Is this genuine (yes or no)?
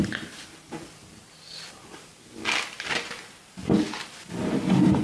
yes